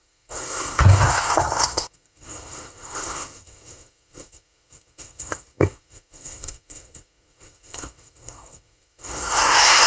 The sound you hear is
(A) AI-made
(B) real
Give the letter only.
A